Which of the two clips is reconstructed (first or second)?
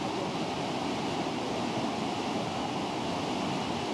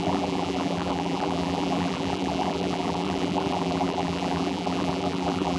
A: second